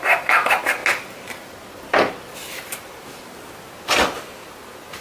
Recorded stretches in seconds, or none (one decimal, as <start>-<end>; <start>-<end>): 0.8-2.9